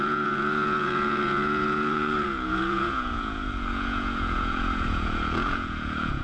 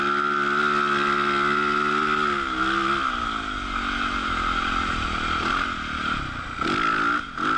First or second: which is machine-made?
first